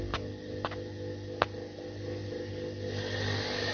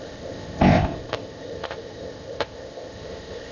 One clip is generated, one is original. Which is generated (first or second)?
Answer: second